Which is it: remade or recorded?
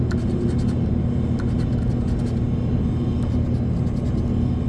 recorded